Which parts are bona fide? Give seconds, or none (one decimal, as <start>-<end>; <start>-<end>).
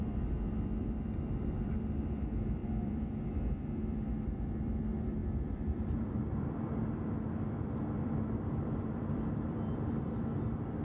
none